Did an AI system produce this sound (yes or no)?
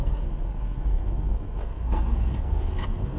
yes